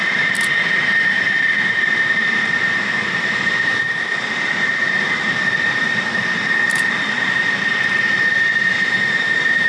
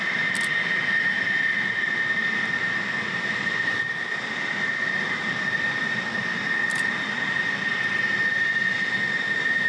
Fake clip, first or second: first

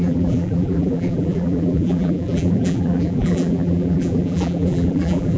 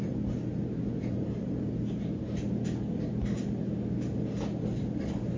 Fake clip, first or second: first